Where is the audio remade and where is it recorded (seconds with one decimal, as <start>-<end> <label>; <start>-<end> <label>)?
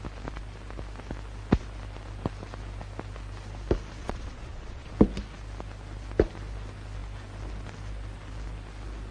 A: 0.0-4.0 recorded; 4.0-4.9 remade; 4.9-9.1 recorded